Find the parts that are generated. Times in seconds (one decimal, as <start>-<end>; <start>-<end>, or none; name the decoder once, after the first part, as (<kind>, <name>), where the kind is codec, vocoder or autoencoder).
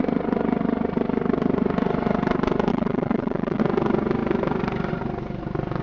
2.7-3.6 (vocoder, WaveNeXt)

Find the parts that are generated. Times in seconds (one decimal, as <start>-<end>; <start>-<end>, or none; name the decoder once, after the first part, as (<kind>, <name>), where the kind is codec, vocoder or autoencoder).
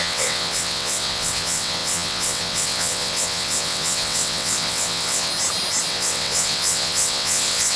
0.0-5.3 (vocoder, WaveNeXt); 5.9-7.8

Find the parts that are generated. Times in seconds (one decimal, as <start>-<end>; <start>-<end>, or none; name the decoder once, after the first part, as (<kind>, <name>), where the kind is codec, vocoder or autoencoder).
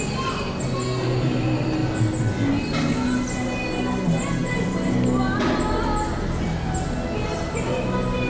none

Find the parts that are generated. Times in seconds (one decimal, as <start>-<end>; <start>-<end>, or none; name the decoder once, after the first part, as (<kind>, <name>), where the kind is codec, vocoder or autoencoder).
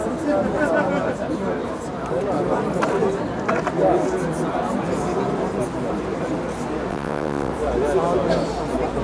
6.9-7.5 (vocoder, WaveNeXt)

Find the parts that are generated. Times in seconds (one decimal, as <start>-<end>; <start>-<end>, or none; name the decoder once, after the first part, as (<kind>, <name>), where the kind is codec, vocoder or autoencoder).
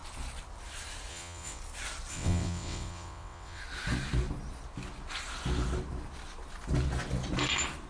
1.1-1.6 (vocoder, WaveNeXt); 2.1-3.6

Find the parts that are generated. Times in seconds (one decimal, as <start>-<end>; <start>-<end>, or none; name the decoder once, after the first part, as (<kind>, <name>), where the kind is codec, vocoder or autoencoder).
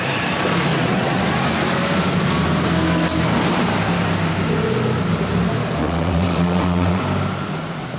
0.7-1.2 (vocoder, WaveNeXt); 5.8-7.0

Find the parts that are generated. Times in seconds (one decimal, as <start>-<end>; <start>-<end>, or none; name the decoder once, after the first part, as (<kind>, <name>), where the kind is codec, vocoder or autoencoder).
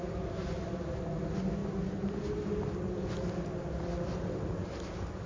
none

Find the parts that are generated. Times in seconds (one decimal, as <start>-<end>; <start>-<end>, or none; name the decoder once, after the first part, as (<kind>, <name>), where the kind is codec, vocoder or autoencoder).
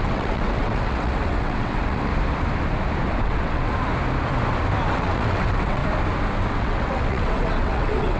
0.0-2.1 (vocoder, WaveNeXt); 3.2-3.7; 4.9-5.8; 6.5-8.2